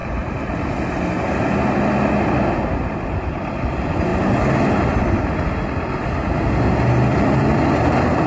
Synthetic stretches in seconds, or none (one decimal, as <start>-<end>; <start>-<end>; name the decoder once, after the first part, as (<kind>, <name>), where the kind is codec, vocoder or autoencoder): 0.0-0.9 (vocoder, BigVGAN v2)